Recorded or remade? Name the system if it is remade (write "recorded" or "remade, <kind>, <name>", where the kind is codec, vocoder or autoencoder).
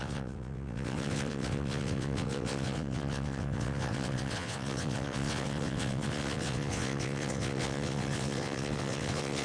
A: remade, vocoder, WaveNeXt